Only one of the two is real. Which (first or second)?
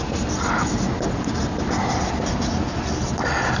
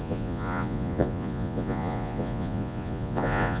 first